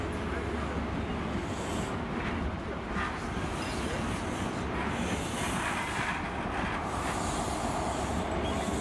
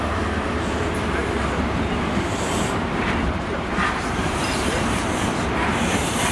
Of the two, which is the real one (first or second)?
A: first